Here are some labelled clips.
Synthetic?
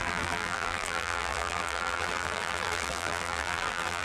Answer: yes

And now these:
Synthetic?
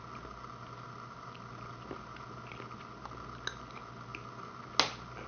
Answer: no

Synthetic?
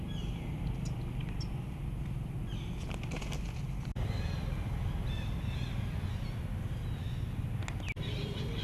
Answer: no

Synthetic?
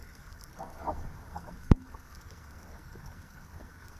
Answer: yes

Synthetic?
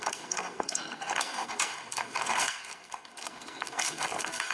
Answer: yes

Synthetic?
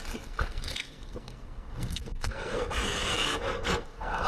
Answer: yes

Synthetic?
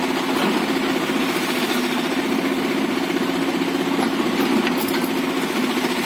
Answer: no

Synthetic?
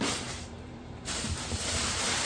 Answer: yes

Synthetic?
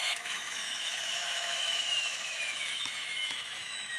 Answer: yes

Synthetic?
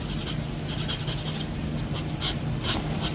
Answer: no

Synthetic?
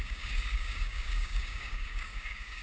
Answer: yes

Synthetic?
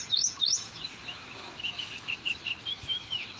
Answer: yes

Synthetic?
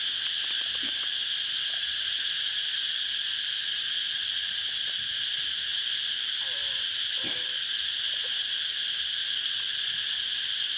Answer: no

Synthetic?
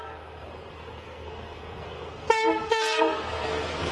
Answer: yes